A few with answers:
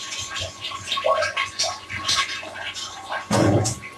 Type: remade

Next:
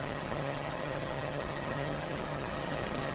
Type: remade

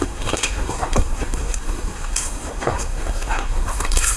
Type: remade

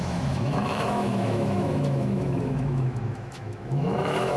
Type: remade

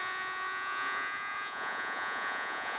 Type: remade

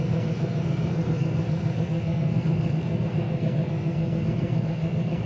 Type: remade